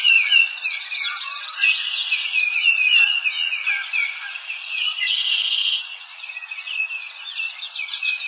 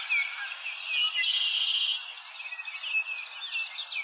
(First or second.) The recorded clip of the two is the second